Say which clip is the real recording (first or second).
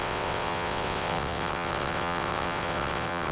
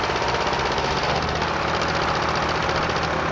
second